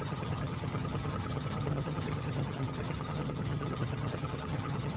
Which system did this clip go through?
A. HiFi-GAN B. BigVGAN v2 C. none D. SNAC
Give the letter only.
A